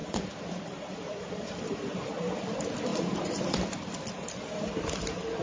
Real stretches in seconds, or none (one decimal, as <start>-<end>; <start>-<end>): 2.1-2.9; 3.9-5.4